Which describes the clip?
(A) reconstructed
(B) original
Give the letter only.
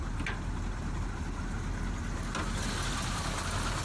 B